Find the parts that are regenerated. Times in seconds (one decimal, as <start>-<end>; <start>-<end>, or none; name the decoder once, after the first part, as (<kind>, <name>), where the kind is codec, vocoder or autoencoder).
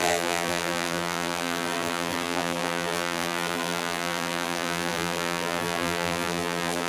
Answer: 0.0-6.9 (vocoder, BigVGAN v2)